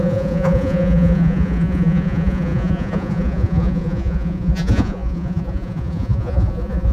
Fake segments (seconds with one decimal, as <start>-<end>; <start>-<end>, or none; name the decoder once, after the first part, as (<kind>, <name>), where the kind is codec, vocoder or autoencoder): 0.0-6.9 (vocoder, Vocos)